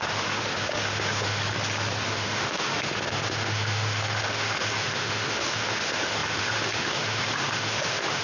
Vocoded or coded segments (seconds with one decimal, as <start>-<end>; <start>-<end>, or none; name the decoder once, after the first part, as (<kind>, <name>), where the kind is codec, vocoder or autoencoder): 0.0-1.4 (autoencoder, DAC-VAE); 2.1-8.2